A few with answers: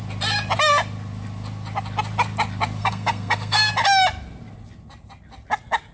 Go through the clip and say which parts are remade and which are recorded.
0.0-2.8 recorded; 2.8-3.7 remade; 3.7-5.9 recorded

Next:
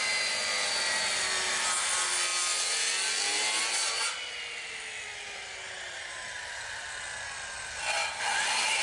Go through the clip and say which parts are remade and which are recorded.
0.0-8.8 recorded

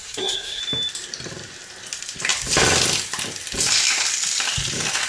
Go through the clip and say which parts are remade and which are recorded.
0.0-0.6 remade; 0.6-5.1 recorded

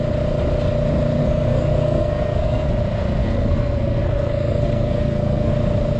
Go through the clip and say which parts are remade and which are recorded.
0.0-1.2 recorded; 1.2-2.7 remade; 2.7-3.2 recorded; 3.2-5.5 remade; 5.5-6.0 recorded

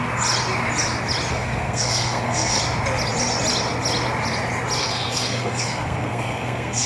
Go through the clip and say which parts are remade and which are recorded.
0.0-1.3 recorded; 1.3-2.6 remade; 2.6-4.8 recorded; 4.8-6.9 remade

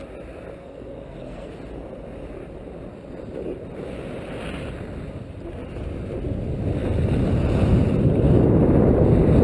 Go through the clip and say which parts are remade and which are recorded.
0.0-0.6 recorded; 0.6-1.5 remade; 1.5-9.4 recorded